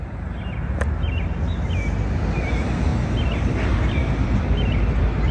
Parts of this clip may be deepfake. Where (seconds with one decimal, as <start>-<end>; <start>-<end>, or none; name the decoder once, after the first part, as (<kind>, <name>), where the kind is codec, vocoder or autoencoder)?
none